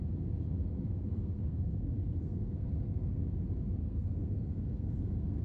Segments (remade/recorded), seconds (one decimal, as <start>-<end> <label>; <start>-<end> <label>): 0.0-0.6 recorded; 0.6-3.2 remade; 3.2-3.8 recorded; 3.8-5.4 remade